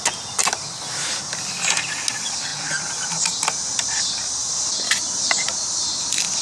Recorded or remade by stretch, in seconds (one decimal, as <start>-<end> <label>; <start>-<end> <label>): 0.0-0.4 recorded; 0.4-1.2 remade; 1.2-2.5 recorded; 2.5-3.4 remade; 3.4-4.4 recorded; 4.4-6.0 remade; 6.0-6.4 recorded